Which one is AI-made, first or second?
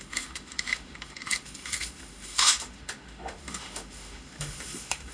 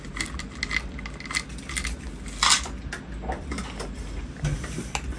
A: first